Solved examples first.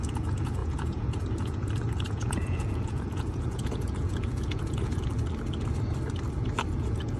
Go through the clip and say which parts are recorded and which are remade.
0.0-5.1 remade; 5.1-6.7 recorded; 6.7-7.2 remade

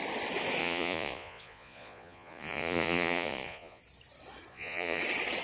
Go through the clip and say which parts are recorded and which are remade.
0.0-0.6 recorded; 0.6-3.8 remade; 3.8-4.5 recorded; 4.5-5.0 remade; 5.0-5.4 recorded

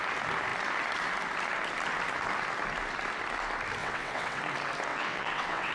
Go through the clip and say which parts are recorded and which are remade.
0.0-3.8 recorded; 3.8-4.4 remade; 4.4-4.9 recorded; 4.9-5.7 remade

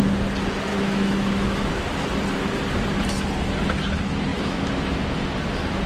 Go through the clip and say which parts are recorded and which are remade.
0.0-0.7 recorded; 0.7-1.7 remade; 1.7-4.3 recorded; 4.3-4.9 remade; 4.9-5.9 recorded